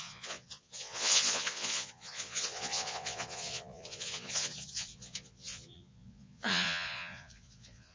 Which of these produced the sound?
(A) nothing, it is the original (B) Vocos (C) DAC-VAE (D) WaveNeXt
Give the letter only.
B